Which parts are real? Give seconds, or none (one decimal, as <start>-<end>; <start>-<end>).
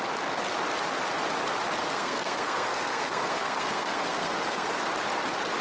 0.0-1.8; 4.7-5.6